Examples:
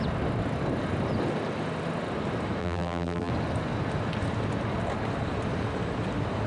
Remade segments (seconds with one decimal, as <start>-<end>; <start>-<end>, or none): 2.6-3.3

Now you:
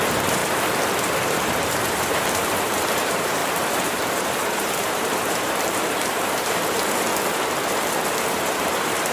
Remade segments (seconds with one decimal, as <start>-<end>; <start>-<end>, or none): 0.0-0.4; 1.1-7.1; 8.3-9.1

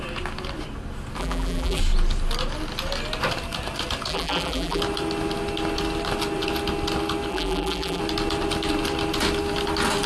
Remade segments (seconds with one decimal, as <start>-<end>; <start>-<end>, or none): 1.2-1.8; 4.1-4.8; 7.3-8.0

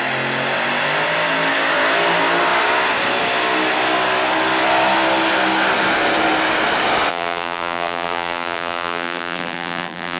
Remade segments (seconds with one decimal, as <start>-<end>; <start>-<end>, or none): 7.1-10.2

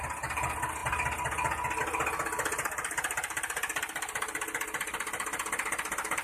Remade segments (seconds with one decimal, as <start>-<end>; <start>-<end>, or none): none